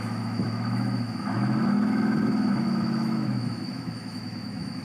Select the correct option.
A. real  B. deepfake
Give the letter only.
B